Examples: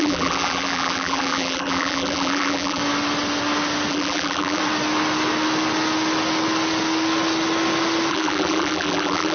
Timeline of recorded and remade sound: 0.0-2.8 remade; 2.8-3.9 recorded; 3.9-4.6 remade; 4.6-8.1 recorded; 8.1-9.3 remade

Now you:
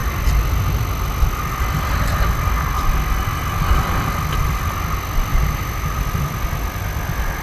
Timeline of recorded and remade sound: 0.0-5.3 recorded; 5.3-6.0 remade; 6.0-7.4 recorded

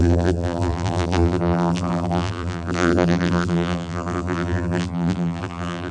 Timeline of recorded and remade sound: 0.0-5.9 remade